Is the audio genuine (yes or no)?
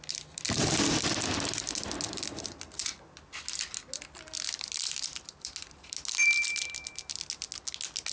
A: yes